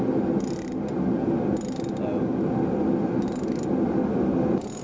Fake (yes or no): no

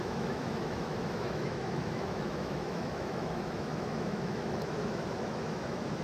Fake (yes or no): yes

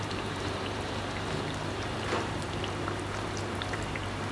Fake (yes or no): yes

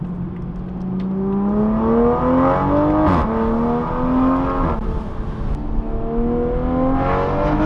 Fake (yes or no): no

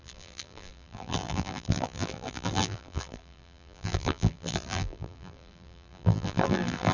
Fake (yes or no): yes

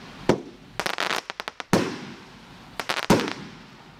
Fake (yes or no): no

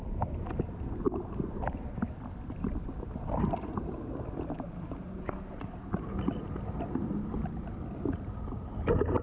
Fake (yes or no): no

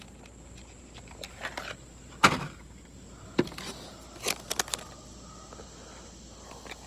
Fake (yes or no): no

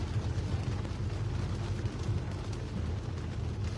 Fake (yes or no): no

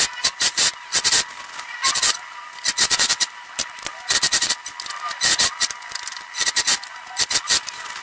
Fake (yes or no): no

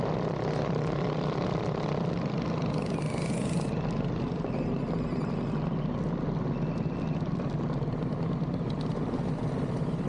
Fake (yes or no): no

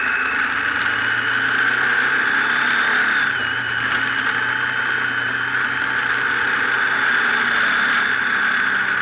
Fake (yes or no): no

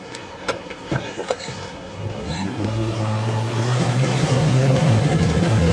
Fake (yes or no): yes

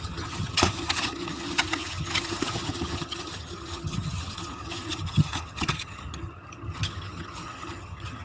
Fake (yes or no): yes